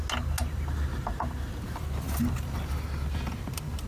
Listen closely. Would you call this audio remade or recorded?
recorded